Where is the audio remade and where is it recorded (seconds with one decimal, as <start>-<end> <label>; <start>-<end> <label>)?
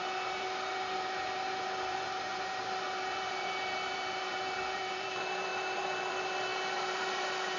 0.0-7.6 remade